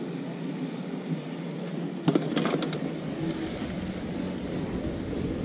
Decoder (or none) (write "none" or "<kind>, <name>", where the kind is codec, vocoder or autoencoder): none